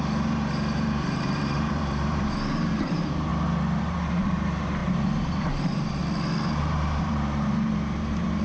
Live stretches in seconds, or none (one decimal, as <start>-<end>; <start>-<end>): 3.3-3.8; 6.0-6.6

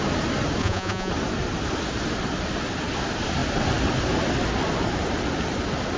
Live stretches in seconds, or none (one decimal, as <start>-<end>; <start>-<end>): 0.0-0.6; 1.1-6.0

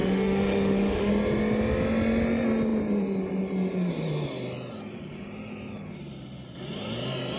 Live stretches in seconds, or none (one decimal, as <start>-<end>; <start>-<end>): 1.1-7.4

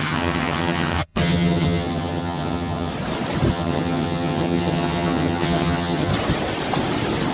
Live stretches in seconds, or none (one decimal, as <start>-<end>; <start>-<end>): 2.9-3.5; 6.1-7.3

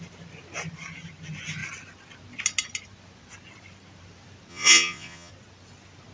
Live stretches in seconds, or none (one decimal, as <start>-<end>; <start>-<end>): 0.0-4.5; 5.3-6.1